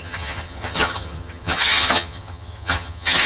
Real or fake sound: fake